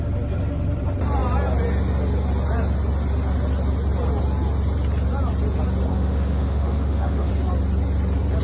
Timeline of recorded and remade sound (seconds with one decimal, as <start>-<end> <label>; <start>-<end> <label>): 0.0-5.9 recorded; 5.9-7.3 remade; 7.3-8.4 recorded